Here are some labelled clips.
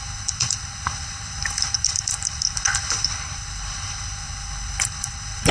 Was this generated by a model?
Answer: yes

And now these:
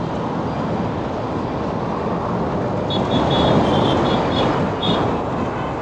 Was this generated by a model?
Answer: no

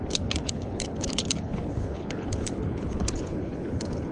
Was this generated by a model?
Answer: yes